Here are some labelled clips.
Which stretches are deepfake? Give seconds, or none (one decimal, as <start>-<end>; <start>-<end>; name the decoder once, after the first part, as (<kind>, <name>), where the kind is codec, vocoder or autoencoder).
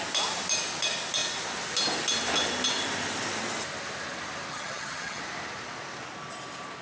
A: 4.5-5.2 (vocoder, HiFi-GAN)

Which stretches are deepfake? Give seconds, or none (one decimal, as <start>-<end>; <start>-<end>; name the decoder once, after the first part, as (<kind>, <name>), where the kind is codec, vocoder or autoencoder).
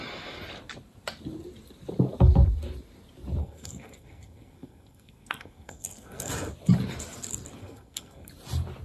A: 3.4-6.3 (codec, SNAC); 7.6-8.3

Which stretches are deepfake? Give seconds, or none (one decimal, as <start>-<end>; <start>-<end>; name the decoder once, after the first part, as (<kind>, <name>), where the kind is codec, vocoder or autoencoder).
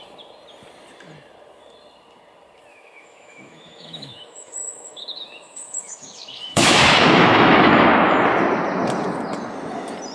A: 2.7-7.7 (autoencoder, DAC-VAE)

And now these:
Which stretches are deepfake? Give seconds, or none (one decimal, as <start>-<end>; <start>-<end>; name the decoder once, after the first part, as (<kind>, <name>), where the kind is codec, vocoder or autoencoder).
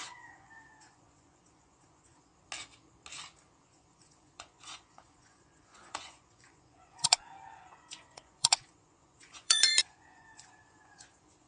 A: 0.0-2.3 (vocoder, Vocos); 3.6-11.5